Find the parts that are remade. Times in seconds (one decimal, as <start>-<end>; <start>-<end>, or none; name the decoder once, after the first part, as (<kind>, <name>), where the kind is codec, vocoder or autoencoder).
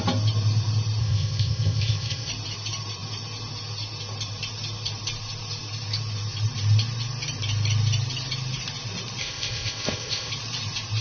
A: 1.0-2.3 (codec, ZipCodec); 9.2-10.3